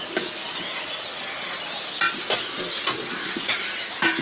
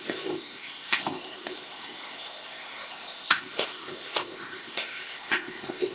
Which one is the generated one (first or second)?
second